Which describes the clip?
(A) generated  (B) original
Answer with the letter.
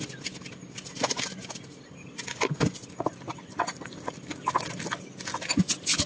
B